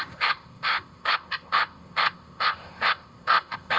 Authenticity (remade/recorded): remade